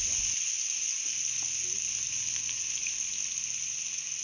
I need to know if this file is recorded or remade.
recorded